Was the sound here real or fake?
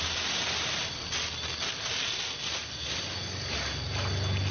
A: real